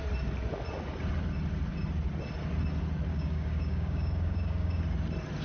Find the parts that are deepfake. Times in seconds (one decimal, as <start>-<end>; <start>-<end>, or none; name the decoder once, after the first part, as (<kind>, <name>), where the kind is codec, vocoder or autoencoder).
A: 3.1-4.8 (codec, DAC)